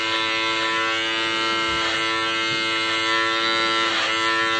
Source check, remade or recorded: recorded